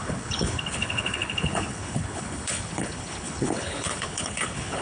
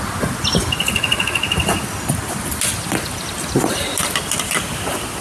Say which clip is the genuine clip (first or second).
second